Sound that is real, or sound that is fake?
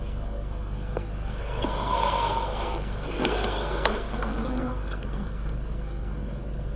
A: fake